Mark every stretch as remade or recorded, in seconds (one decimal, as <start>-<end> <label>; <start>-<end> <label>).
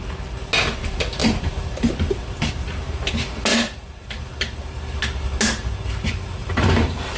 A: 0.0-1.2 recorded; 1.2-1.9 remade; 1.9-3.5 recorded; 3.5-4.1 remade; 4.1-6.4 recorded; 6.4-7.2 remade